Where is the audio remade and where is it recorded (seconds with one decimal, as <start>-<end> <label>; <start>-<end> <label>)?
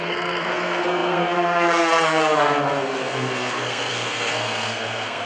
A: 0.0-5.3 remade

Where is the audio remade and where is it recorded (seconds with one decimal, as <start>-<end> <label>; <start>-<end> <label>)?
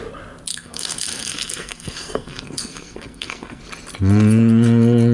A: 0.0-0.5 recorded; 0.5-3.6 remade; 3.6-5.1 recorded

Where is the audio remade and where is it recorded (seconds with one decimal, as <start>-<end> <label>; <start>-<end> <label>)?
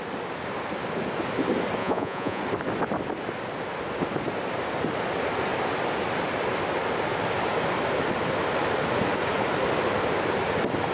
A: 0.0-1.8 recorded; 1.8-2.4 remade; 2.4-10.9 recorded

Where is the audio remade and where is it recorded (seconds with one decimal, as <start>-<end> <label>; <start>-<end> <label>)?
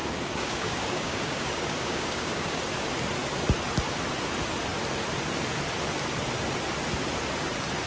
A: 0.0-2.6 remade; 2.6-7.9 recorded